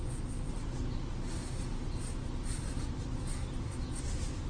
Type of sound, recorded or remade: recorded